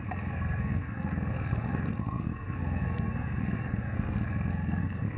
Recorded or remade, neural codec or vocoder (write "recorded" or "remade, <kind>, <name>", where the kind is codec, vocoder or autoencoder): remade, codec, SNAC